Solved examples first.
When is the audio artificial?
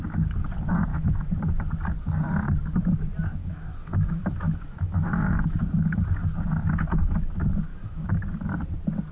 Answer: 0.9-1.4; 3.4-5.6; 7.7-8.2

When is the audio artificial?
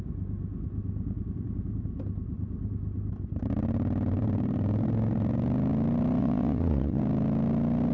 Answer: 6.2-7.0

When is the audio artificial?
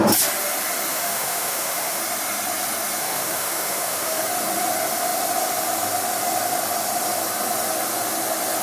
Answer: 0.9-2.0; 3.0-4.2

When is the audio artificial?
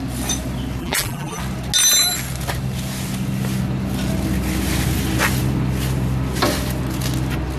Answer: 0.8-1.4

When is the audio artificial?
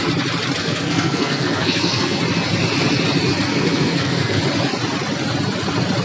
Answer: 0.6-2.2; 3.5-4.4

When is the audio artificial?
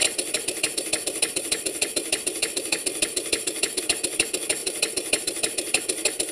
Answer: 0.0-3.8; 4.6-6.3